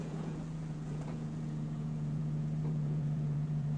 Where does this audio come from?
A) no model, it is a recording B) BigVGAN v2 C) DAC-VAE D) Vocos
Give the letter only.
D